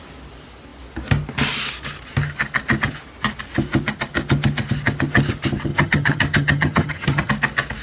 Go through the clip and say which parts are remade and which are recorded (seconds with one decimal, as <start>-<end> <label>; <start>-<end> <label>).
0.0-5.7 recorded; 5.7-7.3 remade; 7.3-7.8 recorded